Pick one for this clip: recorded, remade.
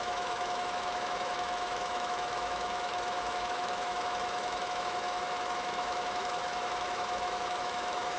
remade